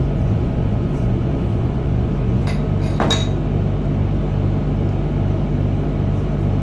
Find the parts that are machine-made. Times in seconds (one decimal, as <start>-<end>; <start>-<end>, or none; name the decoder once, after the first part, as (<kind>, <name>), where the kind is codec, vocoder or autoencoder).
0.0-2.4 (vocoder, Vocos)